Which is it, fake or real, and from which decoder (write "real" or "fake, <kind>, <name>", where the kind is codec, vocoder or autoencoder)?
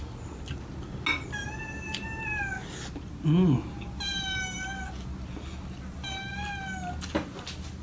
real